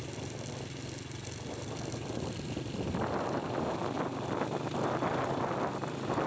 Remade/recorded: recorded